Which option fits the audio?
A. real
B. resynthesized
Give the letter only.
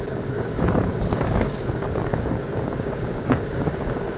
B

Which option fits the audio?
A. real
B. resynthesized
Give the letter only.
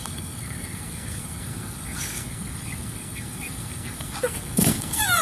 B